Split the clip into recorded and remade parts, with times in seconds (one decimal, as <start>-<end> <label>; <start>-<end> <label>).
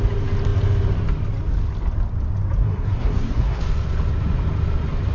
0.0-2.6 recorded; 2.6-3.6 remade; 3.6-5.1 recorded